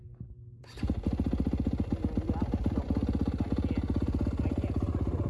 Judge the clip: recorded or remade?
recorded